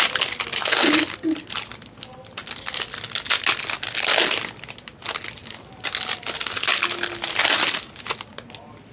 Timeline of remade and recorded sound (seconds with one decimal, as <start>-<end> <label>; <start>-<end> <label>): 0.0-8.9 recorded